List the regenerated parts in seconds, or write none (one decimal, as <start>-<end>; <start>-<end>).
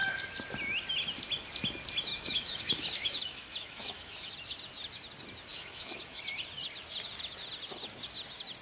2.1-4.3; 5.5-6.2